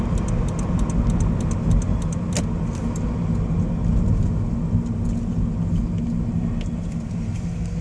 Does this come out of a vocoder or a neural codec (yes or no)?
no